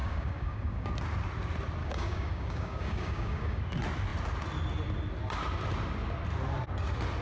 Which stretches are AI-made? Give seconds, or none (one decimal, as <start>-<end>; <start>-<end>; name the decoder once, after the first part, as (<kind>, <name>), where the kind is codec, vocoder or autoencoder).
0.0-0.9 (codec, DAC); 1.8-3.6